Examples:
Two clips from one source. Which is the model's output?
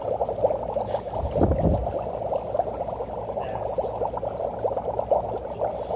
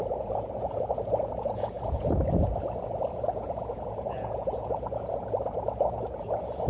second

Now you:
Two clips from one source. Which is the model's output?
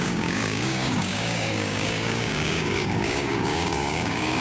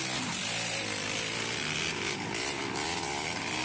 first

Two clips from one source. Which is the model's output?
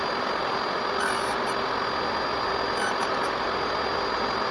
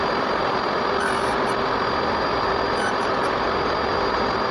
second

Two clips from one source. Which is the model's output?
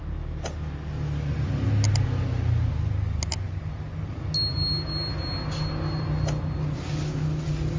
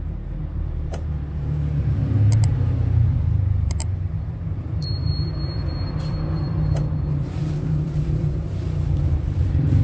second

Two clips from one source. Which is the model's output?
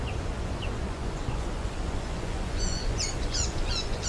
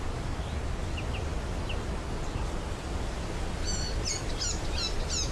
first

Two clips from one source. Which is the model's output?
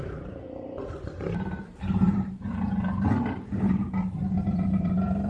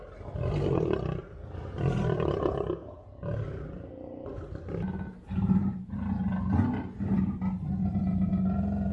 first